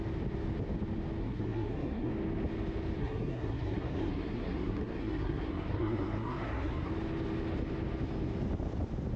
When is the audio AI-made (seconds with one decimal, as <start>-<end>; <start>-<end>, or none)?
1.2-2.1; 3.0-6.9